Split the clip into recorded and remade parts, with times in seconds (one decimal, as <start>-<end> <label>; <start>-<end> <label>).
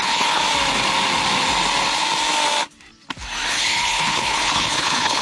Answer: 0.0-0.4 remade; 0.4-3.5 recorded; 3.5-5.2 remade